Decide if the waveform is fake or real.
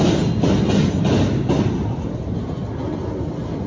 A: real